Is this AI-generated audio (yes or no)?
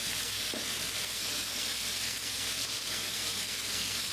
yes